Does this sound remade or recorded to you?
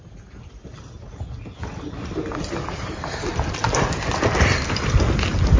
recorded